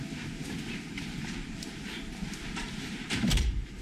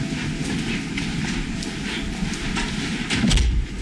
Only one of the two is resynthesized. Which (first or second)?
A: first